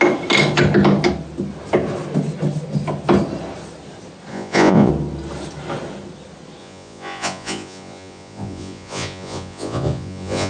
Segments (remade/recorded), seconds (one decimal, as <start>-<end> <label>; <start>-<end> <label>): 0.0-4.3 recorded; 4.3-4.9 remade; 4.9-6.6 recorded; 6.6-10.5 remade